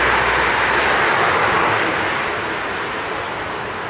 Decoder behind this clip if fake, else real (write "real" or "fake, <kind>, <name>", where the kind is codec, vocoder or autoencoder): real